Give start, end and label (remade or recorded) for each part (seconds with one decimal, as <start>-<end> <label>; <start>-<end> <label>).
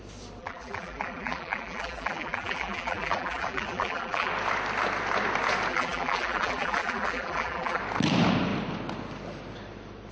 0.0-0.4 recorded; 0.4-4.3 remade; 4.3-5.7 recorded; 5.7-7.8 remade; 7.8-10.1 recorded